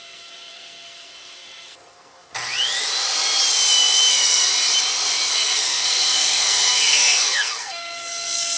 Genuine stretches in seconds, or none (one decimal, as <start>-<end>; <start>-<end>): 2.3-4.1; 4.5-5.3